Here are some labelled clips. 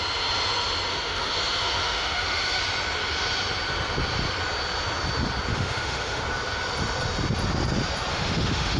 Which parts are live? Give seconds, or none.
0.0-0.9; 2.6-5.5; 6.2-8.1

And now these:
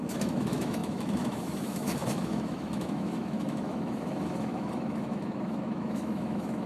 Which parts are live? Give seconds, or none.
none

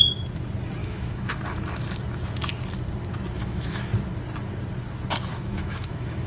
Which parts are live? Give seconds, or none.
0.0-0.8; 1.4-3.4; 3.9-5.3

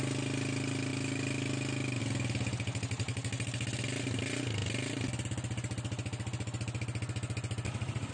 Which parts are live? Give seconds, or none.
0.0-8.1

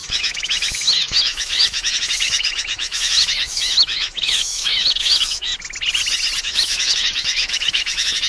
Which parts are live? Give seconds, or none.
5.5-6.4

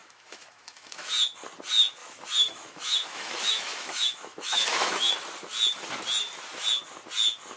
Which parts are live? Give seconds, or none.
1.1-2.0; 5.1-7.6

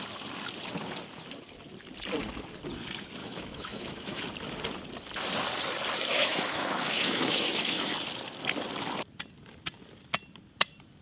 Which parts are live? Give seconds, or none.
0.0-3.2; 4.2-6.1; 7.9-11.0

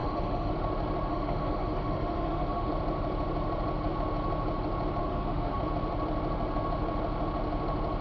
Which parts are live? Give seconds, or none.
0.5-1.1; 2.7-5.0; 5.6-8.0